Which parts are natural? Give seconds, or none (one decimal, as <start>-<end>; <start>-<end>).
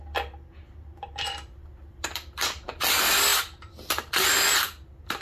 0.0-5.2